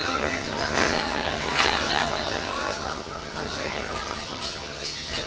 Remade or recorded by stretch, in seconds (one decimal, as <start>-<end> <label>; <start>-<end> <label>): 0.0-5.3 remade